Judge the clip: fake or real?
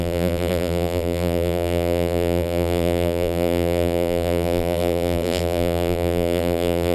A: fake